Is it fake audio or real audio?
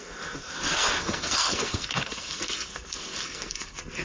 fake